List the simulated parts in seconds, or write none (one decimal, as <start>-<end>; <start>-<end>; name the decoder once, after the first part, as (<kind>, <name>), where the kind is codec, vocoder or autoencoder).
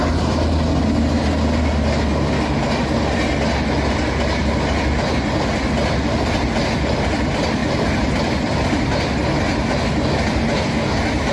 7.6-8.9 (vocoder, BigVGAN v2)